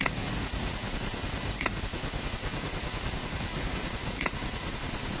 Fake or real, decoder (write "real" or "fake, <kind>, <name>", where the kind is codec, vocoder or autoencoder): fake, vocoder, Vocos